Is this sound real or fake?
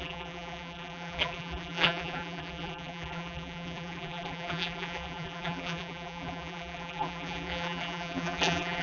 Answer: fake